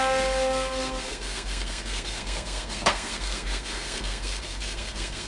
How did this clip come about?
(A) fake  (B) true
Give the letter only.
A